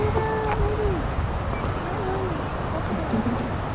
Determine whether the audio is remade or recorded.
recorded